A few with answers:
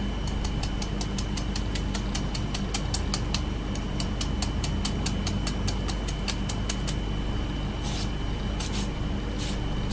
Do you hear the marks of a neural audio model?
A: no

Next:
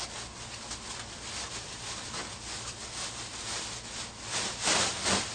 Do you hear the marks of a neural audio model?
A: no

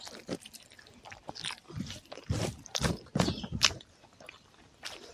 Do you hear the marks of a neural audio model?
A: yes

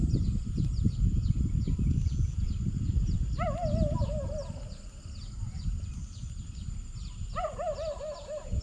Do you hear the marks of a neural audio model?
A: no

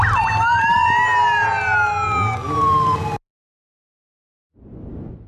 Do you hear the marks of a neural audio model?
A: no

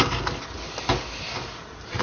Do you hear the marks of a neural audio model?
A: no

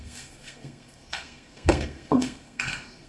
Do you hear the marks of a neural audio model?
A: yes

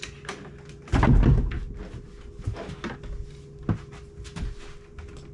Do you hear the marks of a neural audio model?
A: no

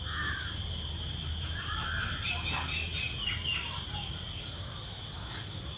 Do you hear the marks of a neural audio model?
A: no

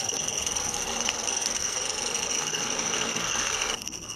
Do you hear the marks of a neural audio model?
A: yes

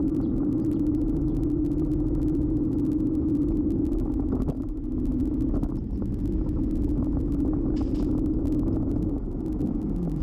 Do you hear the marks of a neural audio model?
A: no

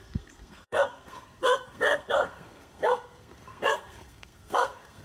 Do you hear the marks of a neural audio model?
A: yes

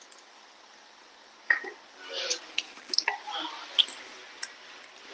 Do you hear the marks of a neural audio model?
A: no